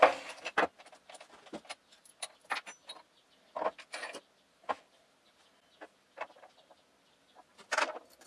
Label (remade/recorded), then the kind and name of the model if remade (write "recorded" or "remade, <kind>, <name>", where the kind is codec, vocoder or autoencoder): recorded